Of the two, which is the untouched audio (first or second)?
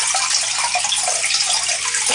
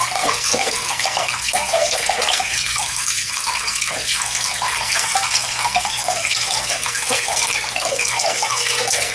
first